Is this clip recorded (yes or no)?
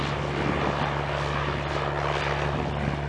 yes